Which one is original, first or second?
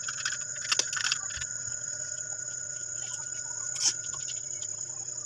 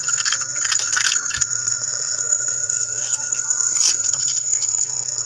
first